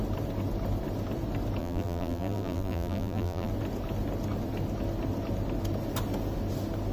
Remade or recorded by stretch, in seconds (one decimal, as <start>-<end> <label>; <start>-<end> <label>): 0.0-1.6 recorded; 1.6-3.5 remade; 3.5-6.9 recorded